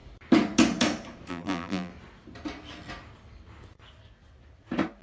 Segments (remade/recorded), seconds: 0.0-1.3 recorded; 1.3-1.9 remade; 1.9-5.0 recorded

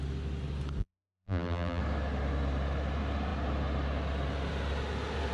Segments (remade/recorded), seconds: 0.0-0.8 recorded; 0.8-1.8 remade; 1.8-5.3 recorded

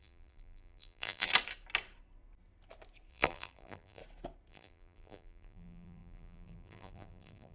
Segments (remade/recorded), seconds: 0.0-1.3 remade; 1.3-3.1 recorded; 3.1-4.0 remade; 4.0-4.5 recorded; 4.5-7.5 remade

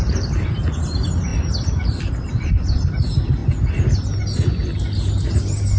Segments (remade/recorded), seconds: 0.0-3.4 remade; 3.4-5.8 recorded

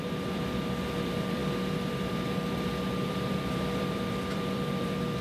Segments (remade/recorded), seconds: 0.0-1.4 remade; 1.4-3.0 recorded; 3.0-5.2 remade

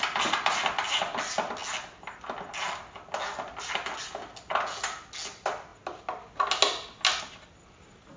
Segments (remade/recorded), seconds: 0.0-8.2 recorded

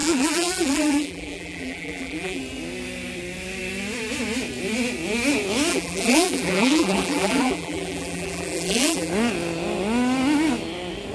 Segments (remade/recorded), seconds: 0.0-2.4 remade; 2.4-5.7 recorded; 5.7-9.1 remade; 9.1-11.1 recorded

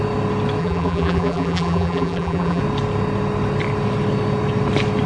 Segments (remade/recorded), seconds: 0.0-0.6 recorded; 0.6-2.6 remade; 2.6-5.1 recorded